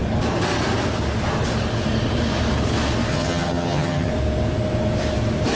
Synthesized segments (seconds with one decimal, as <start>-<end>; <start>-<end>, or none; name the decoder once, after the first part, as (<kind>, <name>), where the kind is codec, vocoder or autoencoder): 3.1-4.1 (vocoder, HiFi-GAN)